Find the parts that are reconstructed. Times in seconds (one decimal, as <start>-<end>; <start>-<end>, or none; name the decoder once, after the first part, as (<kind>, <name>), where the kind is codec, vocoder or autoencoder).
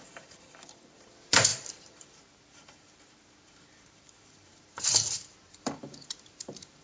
0.0-6.8 (vocoder, BigVGAN v2)